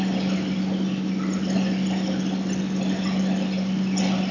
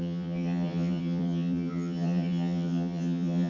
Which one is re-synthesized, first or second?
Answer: second